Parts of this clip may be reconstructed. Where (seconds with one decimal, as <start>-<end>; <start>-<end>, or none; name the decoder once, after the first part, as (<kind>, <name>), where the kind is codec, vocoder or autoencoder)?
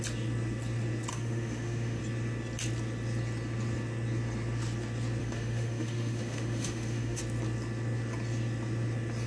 1.1-2.0 (autoencoder, DAC-VAE); 5.2-7.2